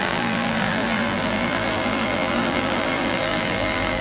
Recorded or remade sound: remade